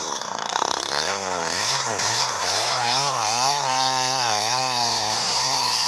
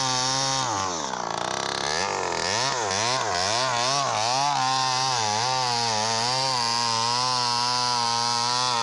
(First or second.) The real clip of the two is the second